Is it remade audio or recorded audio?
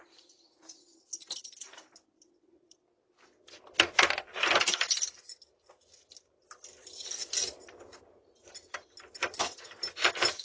recorded